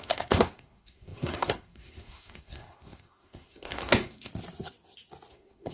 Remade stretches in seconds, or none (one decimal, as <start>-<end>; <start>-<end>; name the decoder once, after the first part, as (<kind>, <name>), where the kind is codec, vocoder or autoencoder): 0.0-4.3 (codec, SNAC); 5.3-5.7